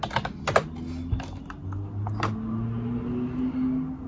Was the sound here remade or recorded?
recorded